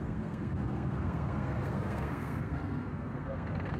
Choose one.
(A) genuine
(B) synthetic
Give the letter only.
B